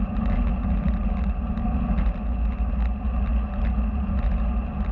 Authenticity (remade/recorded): recorded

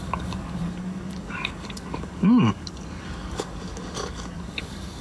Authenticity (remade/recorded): remade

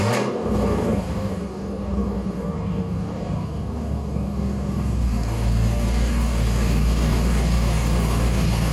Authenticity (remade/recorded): remade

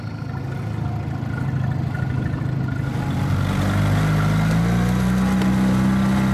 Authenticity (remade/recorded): recorded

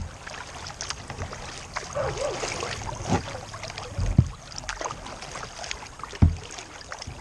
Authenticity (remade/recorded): recorded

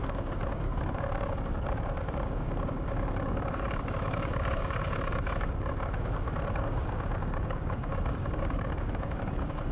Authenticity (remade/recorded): remade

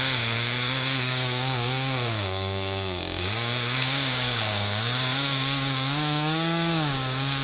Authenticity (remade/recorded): remade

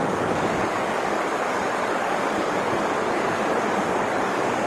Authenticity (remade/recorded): remade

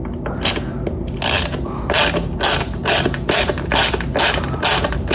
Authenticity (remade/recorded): recorded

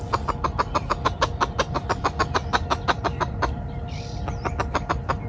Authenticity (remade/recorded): recorded